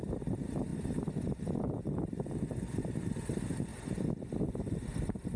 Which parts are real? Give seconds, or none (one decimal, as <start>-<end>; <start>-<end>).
0.7-1.6; 3.7-4.5